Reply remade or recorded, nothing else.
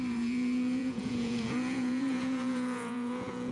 remade